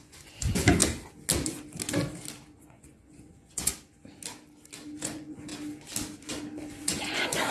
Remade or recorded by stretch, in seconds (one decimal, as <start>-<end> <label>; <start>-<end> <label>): 0.0-0.8 remade; 0.8-2.6 recorded; 2.6-3.7 remade; 3.7-5.0 recorded; 5.0-5.5 remade; 5.5-6.8 recorded; 6.8-7.5 remade